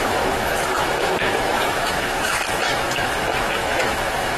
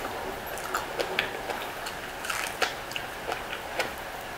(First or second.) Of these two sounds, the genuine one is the second